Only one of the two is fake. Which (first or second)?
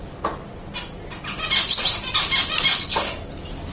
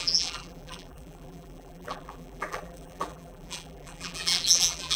second